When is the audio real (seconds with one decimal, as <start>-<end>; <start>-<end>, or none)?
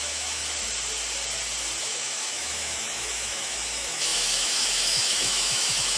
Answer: 0.4-1.8